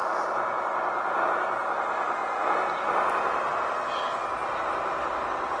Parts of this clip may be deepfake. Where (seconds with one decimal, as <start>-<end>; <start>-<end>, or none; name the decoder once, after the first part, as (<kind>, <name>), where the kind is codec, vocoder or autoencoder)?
1.1-2.2 (vocoder, BigVGAN v2)

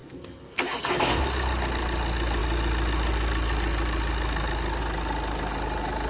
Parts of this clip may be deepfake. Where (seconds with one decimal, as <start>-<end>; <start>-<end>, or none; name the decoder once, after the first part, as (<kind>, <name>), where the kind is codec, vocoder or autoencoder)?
0.0-1.2 (codec, SNAC)